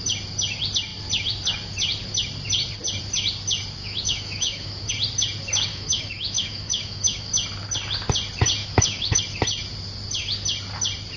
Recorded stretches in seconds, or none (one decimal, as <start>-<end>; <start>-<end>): 0.0-3.8; 4.9-5.7; 7.3-8.6; 9.2-11.2